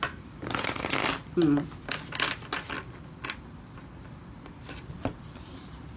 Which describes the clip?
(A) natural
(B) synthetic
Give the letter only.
A